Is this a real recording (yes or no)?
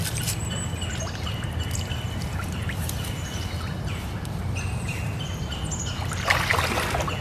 yes